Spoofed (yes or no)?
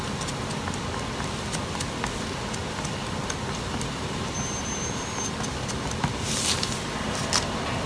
no